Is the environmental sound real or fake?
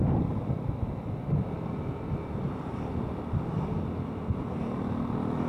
real